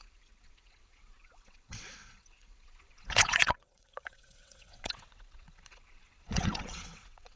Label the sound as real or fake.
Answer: fake